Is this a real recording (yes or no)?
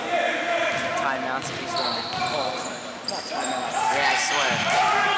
yes